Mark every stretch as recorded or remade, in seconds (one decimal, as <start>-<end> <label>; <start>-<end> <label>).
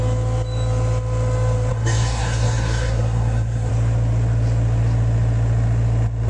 0.0-1.7 recorded; 1.7-3.7 remade; 3.7-6.3 recorded